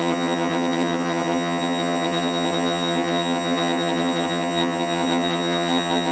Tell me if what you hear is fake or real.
fake